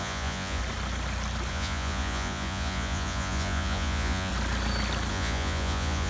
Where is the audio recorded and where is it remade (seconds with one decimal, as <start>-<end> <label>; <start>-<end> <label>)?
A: 0.0-0.6 remade; 0.6-1.5 recorded; 1.5-4.3 remade; 4.3-5.1 recorded; 5.1-6.1 remade